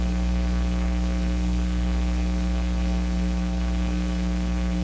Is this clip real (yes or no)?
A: no